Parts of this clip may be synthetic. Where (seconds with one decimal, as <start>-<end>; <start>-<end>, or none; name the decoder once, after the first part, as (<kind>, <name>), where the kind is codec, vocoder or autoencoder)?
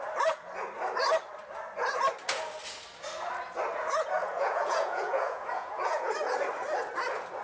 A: 4.2-6.1 (vocoder, Vocos)